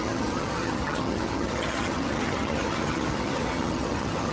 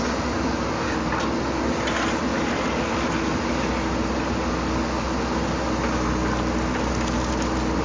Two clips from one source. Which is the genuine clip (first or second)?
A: second